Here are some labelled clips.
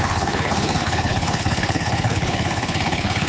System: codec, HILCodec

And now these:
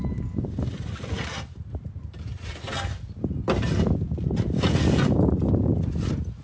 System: none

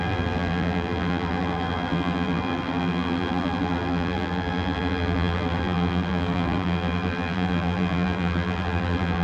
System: vocoder, BigVGAN v2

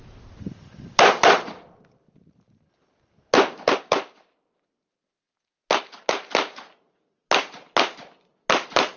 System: none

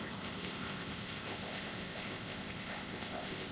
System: codec, ZipCodec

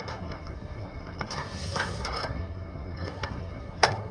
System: codec, SNAC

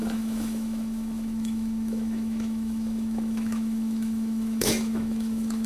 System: autoencoder, DAC-VAE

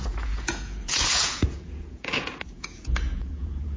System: vocoder, Vocos